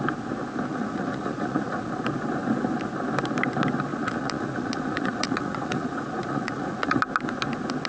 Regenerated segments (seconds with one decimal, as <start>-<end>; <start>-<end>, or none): 0.7-1.9; 3.9-7.0